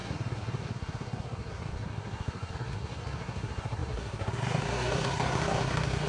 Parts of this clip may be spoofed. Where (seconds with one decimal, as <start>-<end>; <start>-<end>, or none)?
0.0-6.1